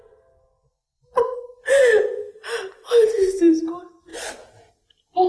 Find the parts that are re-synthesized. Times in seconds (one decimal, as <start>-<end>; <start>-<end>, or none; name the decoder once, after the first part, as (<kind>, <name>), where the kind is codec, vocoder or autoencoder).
none